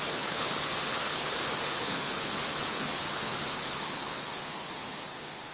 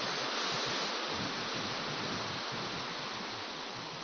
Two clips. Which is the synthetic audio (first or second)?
first